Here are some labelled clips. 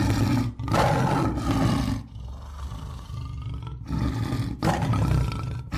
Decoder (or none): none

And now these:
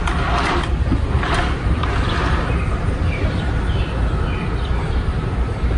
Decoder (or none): none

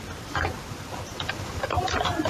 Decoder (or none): none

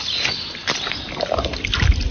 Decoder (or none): none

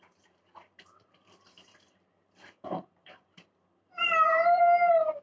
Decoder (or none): vocoder, BigVGAN v2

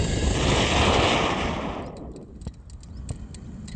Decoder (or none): none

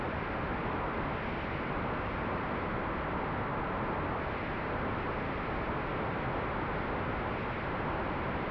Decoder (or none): none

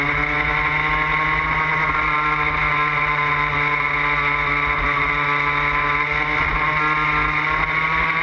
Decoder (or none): none